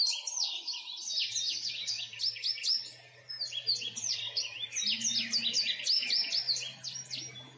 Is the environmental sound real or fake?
real